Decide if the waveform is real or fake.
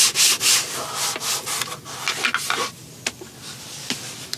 real